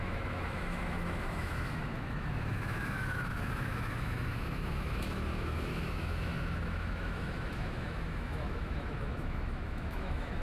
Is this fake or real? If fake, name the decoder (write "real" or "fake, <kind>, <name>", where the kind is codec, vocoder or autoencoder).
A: fake, autoencoder, DAC-VAE